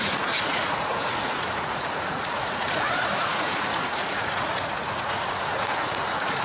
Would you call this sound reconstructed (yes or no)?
yes